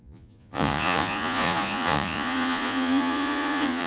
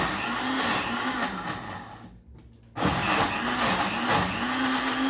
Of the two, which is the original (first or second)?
second